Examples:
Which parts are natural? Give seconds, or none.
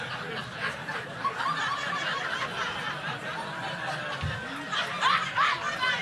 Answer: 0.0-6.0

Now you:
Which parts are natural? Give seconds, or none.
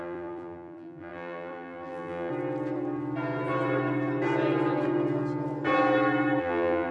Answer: 2.3-6.4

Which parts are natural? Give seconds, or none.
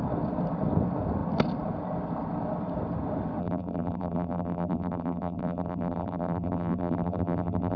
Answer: 0.0-3.4